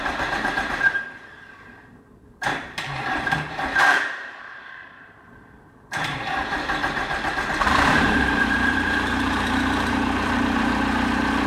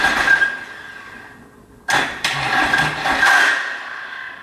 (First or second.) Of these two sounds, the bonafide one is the second